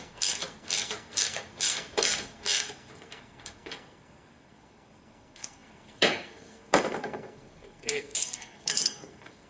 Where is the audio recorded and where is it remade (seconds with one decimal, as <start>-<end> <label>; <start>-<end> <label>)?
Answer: 0.0-9.5 remade